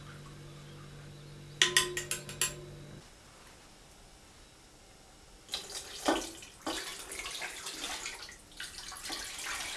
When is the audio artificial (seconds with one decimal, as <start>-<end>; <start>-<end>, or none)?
none